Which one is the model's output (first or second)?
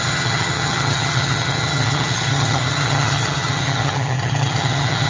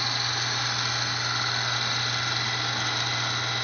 first